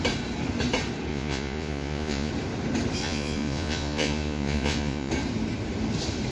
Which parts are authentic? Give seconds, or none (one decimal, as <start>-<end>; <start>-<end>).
0.0-1.1; 2.3-3.0; 5.1-6.3